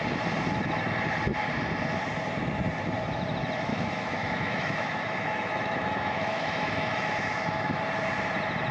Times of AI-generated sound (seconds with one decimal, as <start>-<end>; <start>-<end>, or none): 3.7-7.8